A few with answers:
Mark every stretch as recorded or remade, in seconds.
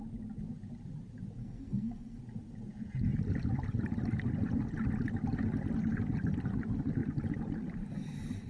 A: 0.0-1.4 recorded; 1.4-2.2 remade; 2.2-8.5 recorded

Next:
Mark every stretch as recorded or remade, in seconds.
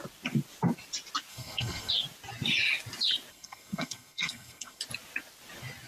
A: 0.0-1.3 recorded; 1.3-1.9 remade; 1.9-3.3 recorded; 3.3-4.8 remade; 4.8-5.9 recorded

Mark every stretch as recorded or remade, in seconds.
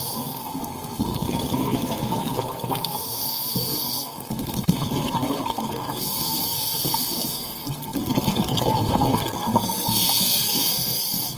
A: 0.0-11.4 remade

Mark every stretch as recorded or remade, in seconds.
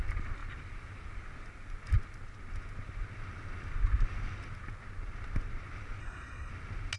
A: 0.0-6.0 recorded; 6.0-6.5 remade; 6.5-7.0 recorded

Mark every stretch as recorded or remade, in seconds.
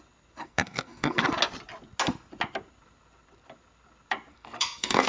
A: 0.0-0.4 recorded; 0.4-1.2 remade; 1.2-4.3 recorded; 4.3-5.1 remade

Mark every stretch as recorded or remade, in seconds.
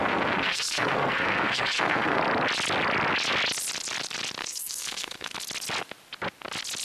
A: 0.0-2.2 remade; 2.2-4.4 recorded; 4.4-5.3 remade; 5.3-6.8 recorded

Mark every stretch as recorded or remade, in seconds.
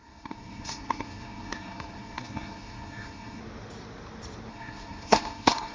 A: 0.0-3.4 remade; 3.4-4.5 recorded; 4.5-5.7 remade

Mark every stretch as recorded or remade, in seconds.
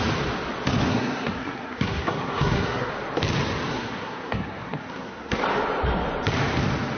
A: 0.0-0.9 recorded; 0.9-2.9 remade; 2.9-3.7 recorded; 3.7-5.4 remade; 5.4-7.0 recorded